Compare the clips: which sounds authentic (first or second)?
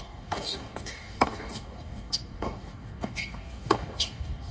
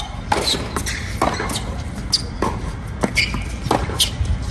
second